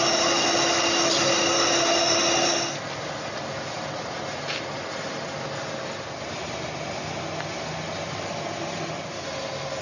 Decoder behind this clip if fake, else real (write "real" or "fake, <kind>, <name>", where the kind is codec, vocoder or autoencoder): real